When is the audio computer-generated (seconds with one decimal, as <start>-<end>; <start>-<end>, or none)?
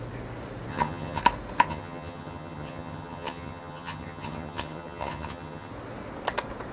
0.7-1.2; 1.7-5.7